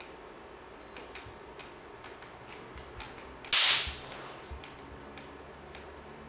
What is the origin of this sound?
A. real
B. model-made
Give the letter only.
A